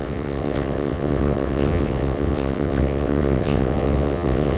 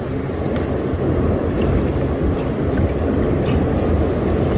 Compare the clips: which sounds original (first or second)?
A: second